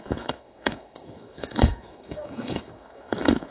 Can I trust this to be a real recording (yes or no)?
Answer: no